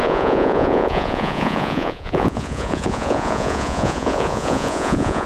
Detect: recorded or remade remade